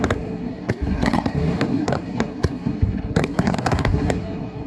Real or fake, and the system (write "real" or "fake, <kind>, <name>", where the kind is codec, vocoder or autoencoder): fake, codec, SNAC